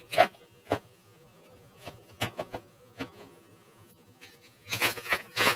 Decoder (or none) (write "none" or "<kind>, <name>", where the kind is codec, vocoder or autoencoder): vocoder, Vocos